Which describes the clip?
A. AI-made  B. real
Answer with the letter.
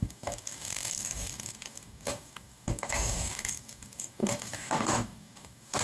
A